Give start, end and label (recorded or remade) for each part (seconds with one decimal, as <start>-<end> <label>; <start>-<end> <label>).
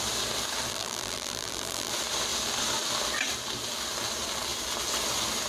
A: 0.0-0.7 recorded; 0.7-1.9 remade; 1.9-5.5 recorded